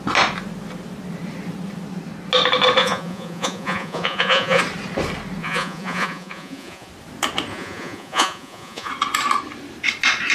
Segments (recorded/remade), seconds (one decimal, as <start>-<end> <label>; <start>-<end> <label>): 0.0-2.8 recorded; 2.8-4.6 remade; 4.6-5.4 recorded; 5.4-6.9 remade; 6.9-7.5 recorded; 7.5-8.9 remade; 8.9-10.3 recorded